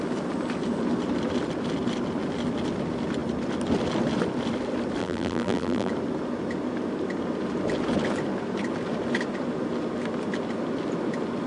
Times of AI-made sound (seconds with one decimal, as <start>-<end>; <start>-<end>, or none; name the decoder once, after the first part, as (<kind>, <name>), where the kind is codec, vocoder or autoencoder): 5.0-5.9 (vocoder, BigVGAN v2)